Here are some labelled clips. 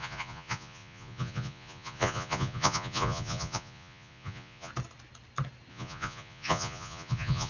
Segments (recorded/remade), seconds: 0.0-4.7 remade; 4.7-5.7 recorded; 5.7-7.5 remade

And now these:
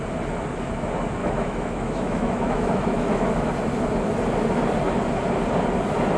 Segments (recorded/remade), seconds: 0.0-1.2 recorded; 1.2-3.5 remade; 3.5-6.2 recorded

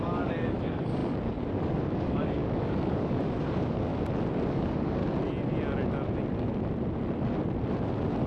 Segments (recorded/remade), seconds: 0.0-3.9 remade; 3.9-4.5 recorded; 4.5-5.0 remade; 5.0-8.3 recorded

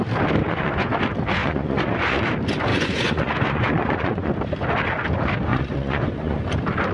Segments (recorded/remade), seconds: 0.0-0.4 recorded; 0.4-0.9 remade; 0.9-1.4 recorded; 1.4-2.3 remade; 2.3-2.7 recorded; 2.7-4.3 remade; 4.3-5.5 recorded; 5.5-6.4 remade; 6.4-6.9 recorded

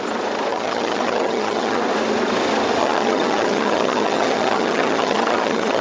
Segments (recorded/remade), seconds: 0.0-0.5 recorded; 0.5-1.8 remade; 1.8-2.8 recorded; 2.8-5.8 remade

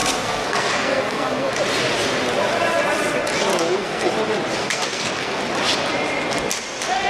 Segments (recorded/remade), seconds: 0.0-1.5 remade; 1.5-3.5 recorded; 3.5-4.1 remade; 4.1-4.6 recorded; 4.6-5.4 remade; 5.4-7.1 recorded